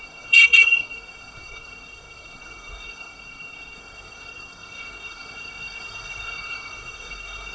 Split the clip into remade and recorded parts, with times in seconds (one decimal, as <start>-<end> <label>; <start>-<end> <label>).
0.0-7.5 remade